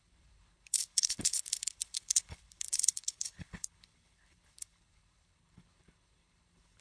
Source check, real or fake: fake